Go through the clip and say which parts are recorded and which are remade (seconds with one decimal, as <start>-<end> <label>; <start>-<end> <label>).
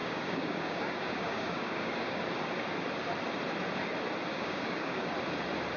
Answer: 0.0-2.2 remade; 2.2-4.3 recorded; 4.3-5.1 remade; 5.1-5.8 recorded